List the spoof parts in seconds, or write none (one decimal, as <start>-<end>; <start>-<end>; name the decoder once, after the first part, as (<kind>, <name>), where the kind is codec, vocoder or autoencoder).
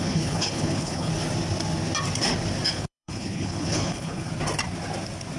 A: 0.0-1.1 (codec, HILCodec); 2.7-4.3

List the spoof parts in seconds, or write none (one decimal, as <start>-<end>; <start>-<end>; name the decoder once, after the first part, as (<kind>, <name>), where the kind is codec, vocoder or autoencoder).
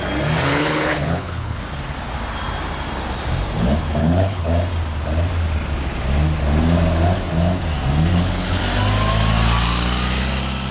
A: 0.5-1.6 (codec, HILCodec); 4.0-4.5; 8.1-8.6